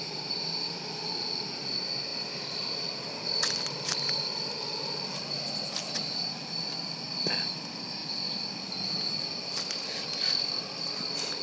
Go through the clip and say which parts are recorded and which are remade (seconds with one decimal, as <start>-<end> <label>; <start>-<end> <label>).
0.0-11.4 recorded